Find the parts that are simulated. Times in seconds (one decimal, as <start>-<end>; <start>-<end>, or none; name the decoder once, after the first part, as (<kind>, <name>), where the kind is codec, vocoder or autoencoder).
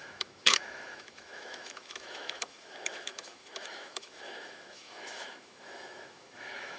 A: 0.0-6.8 (autoencoder, DAC-VAE)